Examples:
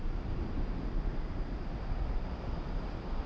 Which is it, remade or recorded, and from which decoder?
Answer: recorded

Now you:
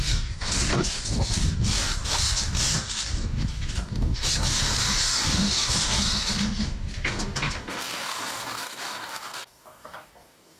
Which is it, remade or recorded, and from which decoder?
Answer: remade, codec, DAC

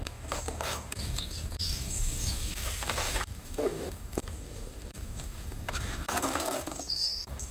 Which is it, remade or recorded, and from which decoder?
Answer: remade, codec, DAC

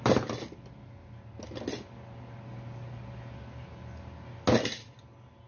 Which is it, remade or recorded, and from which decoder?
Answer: recorded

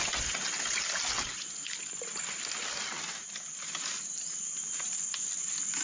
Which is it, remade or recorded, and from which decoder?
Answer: recorded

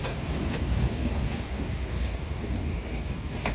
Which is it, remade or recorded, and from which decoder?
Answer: remade, codec, DAC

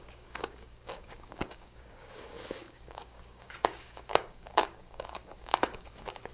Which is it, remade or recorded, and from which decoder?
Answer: remade, codec, DAC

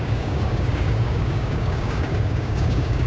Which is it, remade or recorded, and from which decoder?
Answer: remade, codec, DAC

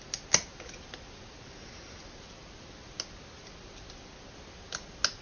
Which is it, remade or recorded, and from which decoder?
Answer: recorded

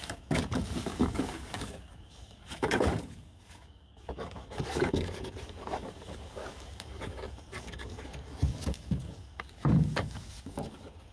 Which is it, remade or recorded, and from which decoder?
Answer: remade, codec, DAC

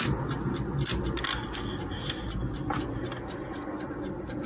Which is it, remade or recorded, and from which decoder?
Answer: recorded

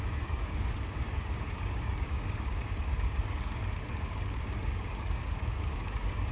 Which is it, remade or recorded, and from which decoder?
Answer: remade, codec, DAC